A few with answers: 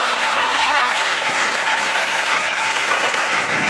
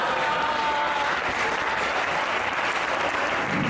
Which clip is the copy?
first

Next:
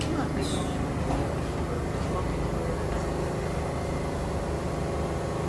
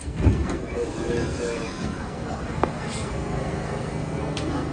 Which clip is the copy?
second